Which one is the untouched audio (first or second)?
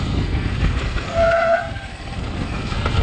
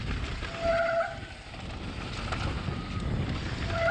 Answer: second